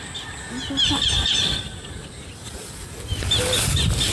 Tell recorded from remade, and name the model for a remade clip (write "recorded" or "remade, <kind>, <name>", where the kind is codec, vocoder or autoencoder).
recorded